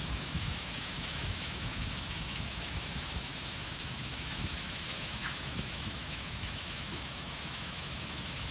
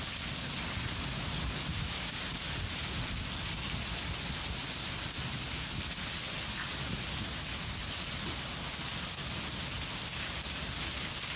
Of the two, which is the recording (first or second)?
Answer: second